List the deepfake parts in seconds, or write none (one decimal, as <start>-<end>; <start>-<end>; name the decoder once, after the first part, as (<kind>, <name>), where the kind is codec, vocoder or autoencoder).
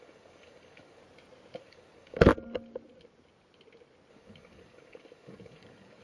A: 0.0-1.0 (codec, DAC); 1.6-2.3; 4.1-6.0